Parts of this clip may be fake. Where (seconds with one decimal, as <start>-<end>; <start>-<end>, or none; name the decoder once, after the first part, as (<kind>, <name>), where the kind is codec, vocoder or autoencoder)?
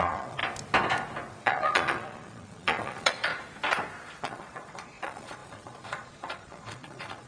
0.0-0.4 (vocoder, Vocos); 1.4-3.3; 4.2-7.3